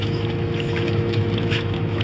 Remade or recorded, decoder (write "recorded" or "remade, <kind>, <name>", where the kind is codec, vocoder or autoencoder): remade, autoencoder, DAC-VAE